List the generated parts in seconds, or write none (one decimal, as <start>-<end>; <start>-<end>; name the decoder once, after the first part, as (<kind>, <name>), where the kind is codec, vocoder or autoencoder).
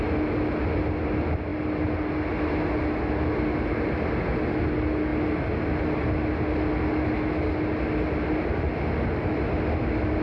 none